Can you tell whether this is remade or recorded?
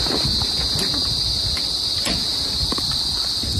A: recorded